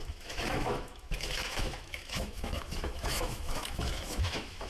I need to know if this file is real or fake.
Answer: fake